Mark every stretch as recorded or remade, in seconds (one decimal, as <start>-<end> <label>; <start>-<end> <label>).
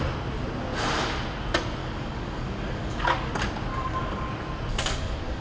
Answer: 0.0-1.8 recorded; 1.8-3.3 remade; 3.3-3.7 recorded; 3.7-4.3 remade; 4.3-4.7 recorded; 4.7-5.4 remade